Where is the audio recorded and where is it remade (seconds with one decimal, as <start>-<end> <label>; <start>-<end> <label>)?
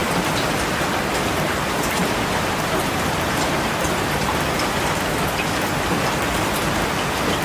0.0-0.5 remade; 0.5-2.0 recorded; 2.0-3.8 remade; 3.8-7.4 recorded